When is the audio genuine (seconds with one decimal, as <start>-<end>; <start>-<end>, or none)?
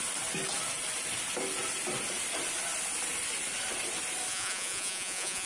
0.0-4.3